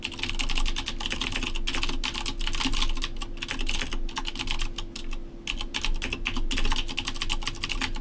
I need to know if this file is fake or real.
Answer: real